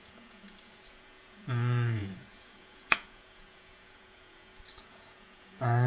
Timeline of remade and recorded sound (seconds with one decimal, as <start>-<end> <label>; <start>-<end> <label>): 0.0-5.9 remade